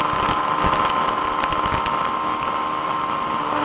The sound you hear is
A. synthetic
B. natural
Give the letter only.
B